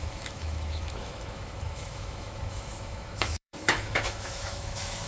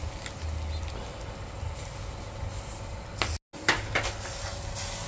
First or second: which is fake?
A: first